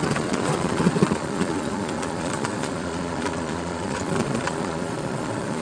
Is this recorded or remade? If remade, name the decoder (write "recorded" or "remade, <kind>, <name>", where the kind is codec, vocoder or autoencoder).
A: remade, vocoder, Vocos